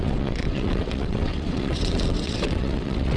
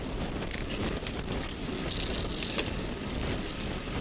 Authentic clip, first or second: second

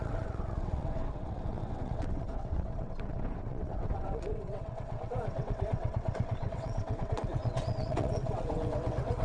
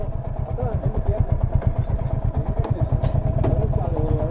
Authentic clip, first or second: second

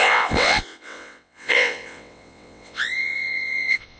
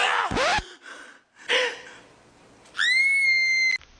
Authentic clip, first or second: second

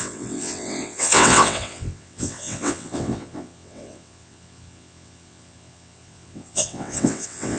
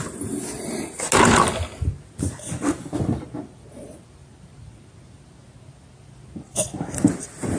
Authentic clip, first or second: second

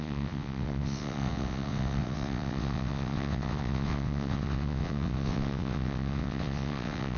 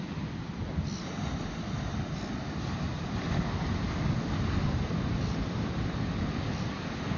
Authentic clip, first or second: second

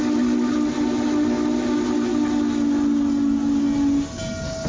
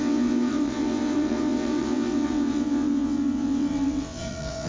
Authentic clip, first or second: first